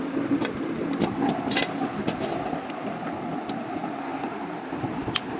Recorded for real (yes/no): yes